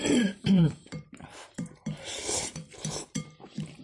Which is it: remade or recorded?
remade